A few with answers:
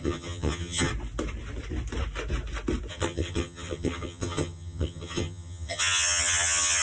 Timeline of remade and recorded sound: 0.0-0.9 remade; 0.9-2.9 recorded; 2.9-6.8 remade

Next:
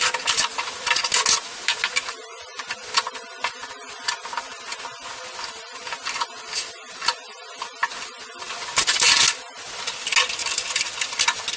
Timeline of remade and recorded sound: 0.0-11.6 recorded

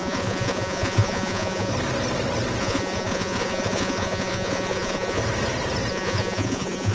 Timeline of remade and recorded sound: 0.0-1.7 remade; 1.7-2.6 recorded; 2.6-5.2 remade; 5.2-5.9 recorded; 5.9-6.9 remade